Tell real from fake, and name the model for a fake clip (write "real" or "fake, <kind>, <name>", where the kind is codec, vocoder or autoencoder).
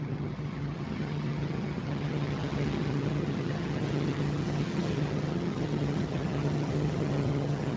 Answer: fake, vocoder, HiFi-GAN